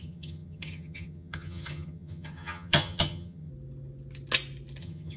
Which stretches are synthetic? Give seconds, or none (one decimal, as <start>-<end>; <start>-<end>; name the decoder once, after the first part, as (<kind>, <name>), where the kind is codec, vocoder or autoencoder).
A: 0.0-3.5 (vocoder, HiFi-GAN); 4.8-5.2

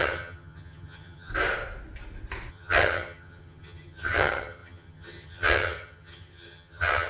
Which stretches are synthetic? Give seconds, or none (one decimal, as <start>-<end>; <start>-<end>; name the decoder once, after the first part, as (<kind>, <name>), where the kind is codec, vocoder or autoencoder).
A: 0.0-1.3 (vocoder, HiFi-GAN); 2.5-7.1

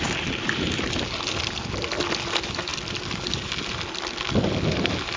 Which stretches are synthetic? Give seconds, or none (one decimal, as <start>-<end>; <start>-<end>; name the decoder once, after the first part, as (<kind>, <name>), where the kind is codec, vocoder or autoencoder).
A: none

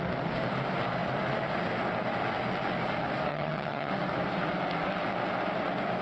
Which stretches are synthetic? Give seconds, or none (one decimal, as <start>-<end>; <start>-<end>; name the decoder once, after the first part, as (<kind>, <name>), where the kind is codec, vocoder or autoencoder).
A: 3.3-3.9 (vocoder, HiFi-GAN)